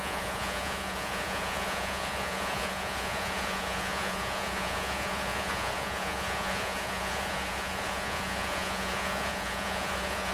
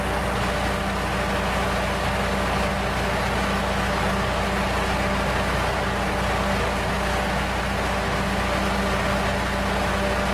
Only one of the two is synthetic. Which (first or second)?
first